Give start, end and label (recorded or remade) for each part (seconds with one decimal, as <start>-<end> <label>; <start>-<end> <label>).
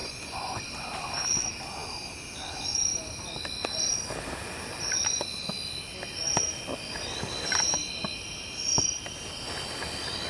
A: 0.0-0.6 remade; 0.6-10.3 recorded